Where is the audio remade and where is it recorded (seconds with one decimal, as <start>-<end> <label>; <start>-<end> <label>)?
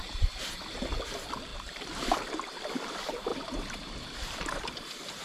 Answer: 0.0-3.3 recorded; 3.3-4.7 remade; 4.7-5.2 recorded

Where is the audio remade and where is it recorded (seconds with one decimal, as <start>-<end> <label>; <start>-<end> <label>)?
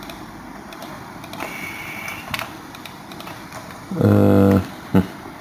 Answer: 0.0-0.8 recorded; 0.8-4.0 remade; 4.0-5.4 recorded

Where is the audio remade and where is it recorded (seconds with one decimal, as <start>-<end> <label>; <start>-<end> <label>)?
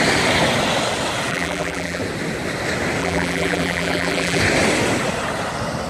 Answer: 0.0-1.3 recorded; 1.3-2.0 remade; 2.0-3.0 recorded; 3.0-4.4 remade; 4.4-5.9 recorded